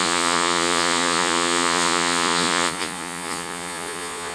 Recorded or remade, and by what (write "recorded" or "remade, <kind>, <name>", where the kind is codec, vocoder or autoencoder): remade, vocoder, Vocos